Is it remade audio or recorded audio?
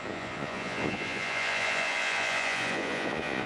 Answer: remade